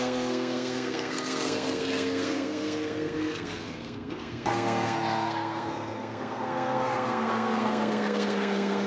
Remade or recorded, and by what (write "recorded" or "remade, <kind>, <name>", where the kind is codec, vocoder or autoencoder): remade, codec, SNAC